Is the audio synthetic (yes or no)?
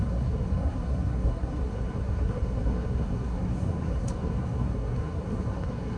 yes